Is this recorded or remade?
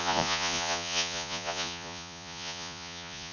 remade